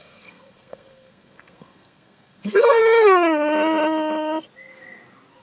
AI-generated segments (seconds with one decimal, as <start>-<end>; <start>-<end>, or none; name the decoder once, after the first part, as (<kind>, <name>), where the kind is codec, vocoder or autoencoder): 0.0-2.8 (codec, SNAC)